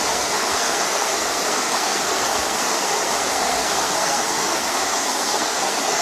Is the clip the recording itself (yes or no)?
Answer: no